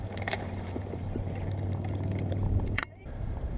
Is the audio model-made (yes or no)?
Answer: yes